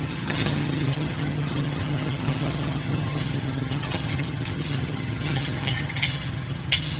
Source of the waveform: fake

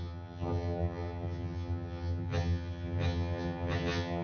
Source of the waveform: fake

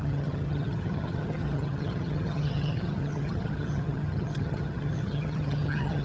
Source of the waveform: fake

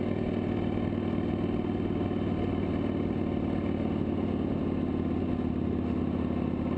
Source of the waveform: real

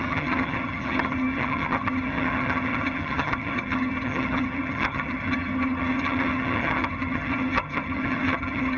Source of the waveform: fake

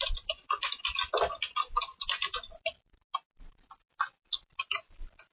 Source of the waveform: real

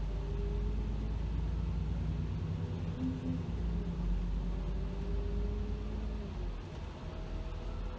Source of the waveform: real